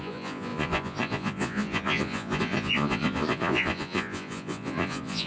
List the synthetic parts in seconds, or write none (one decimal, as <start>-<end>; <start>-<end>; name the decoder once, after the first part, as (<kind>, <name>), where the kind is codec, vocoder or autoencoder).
0.0-5.3 (vocoder, Vocos)